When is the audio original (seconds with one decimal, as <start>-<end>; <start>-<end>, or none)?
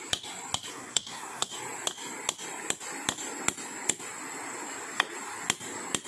0.0-0.7; 1.5-6.1